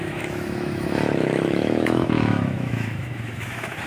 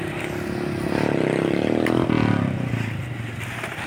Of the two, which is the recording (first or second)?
second